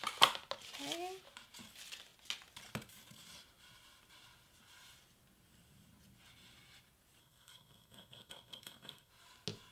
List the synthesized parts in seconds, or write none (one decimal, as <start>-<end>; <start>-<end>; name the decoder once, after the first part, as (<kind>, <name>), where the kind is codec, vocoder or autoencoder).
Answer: 7.2-9.1 (codec, SNAC)